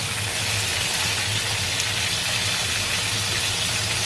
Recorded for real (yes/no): yes